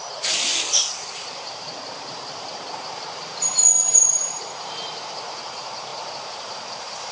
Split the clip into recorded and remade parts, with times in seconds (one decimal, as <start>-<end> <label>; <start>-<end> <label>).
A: 0.0-0.5 remade; 0.5-1.1 recorded; 1.1-7.1 remade

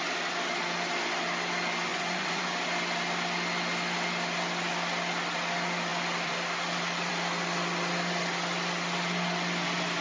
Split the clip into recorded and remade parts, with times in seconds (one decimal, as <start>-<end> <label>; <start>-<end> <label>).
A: 0.0-1.9 recorded; 1.9-2.4 remade; 2.4-10.0 recorded

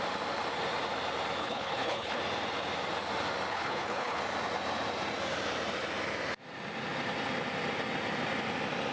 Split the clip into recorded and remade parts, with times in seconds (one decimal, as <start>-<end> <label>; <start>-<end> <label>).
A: 0.0-1.4 recorded; 1.4-2.2 remade; 2.2-3.5 recorded; 3.5-4.2 remade; 4.2-8.9 recorded

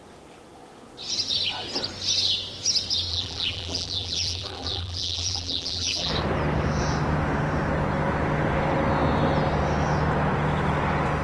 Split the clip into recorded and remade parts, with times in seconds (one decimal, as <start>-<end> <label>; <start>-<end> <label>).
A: 0.0-3.1 recorded; 3.1-6.1 remade; 6.1-11.2 recorded

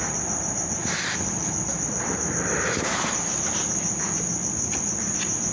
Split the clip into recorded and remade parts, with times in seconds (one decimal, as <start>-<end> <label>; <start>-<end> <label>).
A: 0.0-5.5 recorded

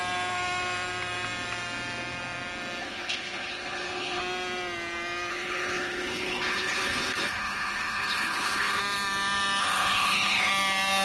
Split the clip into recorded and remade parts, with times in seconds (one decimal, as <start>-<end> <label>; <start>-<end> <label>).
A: 0.0-2.8 recorded; 2.8-4.2 remade; 4.2-5.3 recorded; 5.3-8.8 remade; 8.8-9.6 recorded; 9.6-10.5 remade; 10.5-11.0 recorded

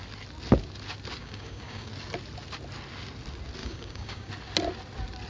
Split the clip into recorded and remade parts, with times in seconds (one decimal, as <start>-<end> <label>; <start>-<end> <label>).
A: 0.0-1.2 recorded; 1.2-1.9 remade; 1.9-3.6 recorded; 3.6-4.3 remade; 4.3-5.3 recorded